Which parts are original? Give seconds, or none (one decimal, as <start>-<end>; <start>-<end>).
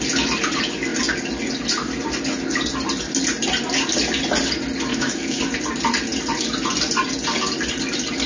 0.0-4.9; 5.4-8.3